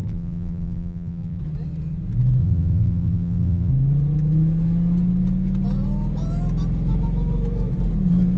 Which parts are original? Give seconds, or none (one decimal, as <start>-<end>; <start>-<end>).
1.4-2.4; 3.7-8.4